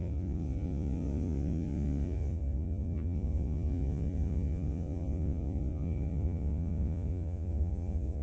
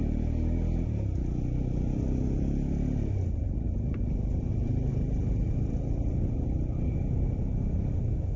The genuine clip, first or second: second